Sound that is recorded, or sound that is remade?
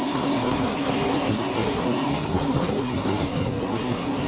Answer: remade